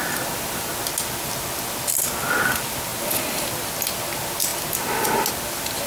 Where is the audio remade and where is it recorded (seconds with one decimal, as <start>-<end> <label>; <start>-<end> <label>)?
0.0-5.9 recorded